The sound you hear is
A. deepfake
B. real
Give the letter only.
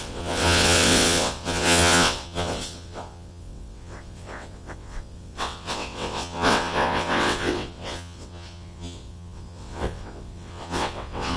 A